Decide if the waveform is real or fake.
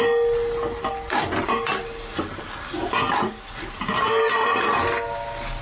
real